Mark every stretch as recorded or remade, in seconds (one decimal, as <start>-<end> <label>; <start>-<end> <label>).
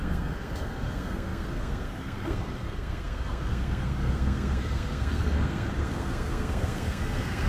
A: 0.0-7.5 remade